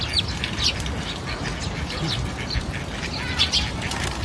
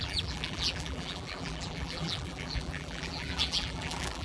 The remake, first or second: second